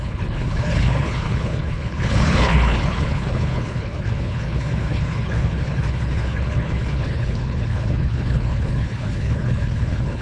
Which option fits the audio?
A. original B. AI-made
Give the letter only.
B